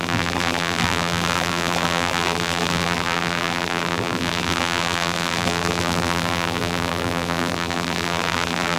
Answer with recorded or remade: remade